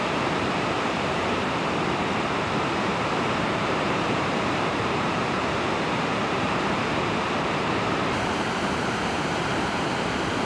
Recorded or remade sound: remade